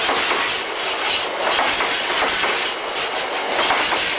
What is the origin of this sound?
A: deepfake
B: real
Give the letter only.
B